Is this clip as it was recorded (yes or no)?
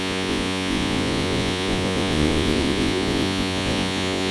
no